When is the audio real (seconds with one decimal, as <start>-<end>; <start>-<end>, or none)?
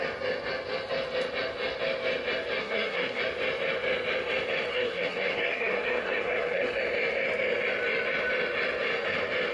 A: 0.0-2.6; 3.2-4.7; 6.8-9.5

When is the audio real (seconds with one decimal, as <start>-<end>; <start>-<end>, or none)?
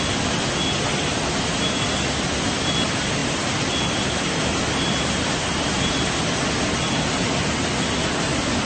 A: 0.0-8.6